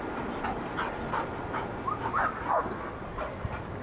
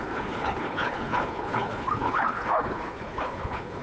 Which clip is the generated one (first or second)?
second